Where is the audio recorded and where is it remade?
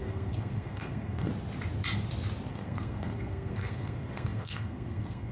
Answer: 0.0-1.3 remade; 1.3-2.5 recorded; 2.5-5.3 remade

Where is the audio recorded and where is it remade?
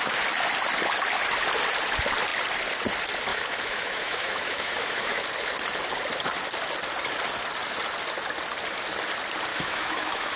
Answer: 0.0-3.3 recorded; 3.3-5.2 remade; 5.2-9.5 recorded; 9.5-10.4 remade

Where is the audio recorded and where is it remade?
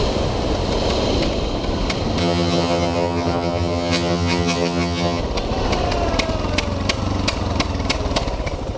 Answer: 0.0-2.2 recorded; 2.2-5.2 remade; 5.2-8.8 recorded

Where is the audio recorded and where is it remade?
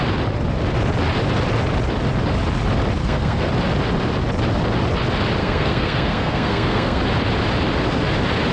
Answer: 0.0-3.0 recorded; 3.0-3.5 remade; 3.5-5.4 recorded; 5.4-7.0 remade; 7.0-8.5 recorded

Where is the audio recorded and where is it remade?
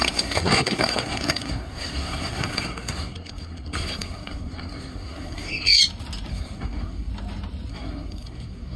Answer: 0.0-5.8 remade; 5.8-6.3 recorded; 6.3-7.1 remade; 7.1-7.7 recorded; 7.7-8.8 remade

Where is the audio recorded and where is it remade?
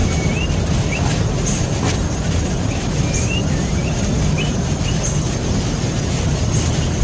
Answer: 0.0-7.0 recorded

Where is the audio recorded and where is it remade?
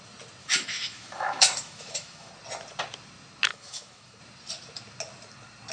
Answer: 0.0-0.4 recorded; 0.4-2.3 remade; 2.3-3.5 recorded; 3.5-4.2 remade; 4.2-5.7 recorded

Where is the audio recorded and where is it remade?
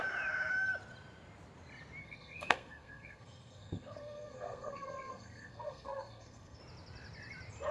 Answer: 0.0-2.0 recorded; 2.0-6.6 remade; 6.6-7.7 recorded